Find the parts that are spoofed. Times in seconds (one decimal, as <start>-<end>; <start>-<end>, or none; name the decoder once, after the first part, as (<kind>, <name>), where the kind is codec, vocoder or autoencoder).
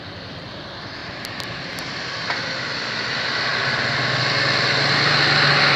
1.0-1.8 (vocoder, BigVGAN v2)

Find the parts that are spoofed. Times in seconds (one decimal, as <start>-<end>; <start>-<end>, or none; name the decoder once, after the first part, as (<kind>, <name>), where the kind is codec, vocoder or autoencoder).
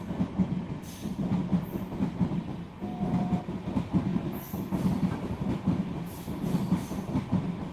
1.5-2.4 (vocoder, BigVGAN v2); 2.9-3.4; 4.1-7.1